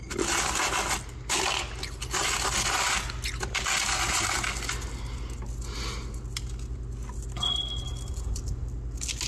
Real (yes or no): yes